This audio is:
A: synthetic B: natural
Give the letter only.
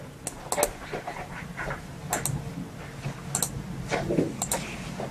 B